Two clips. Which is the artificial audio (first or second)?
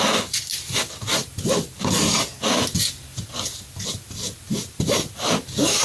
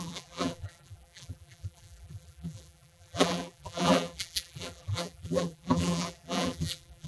second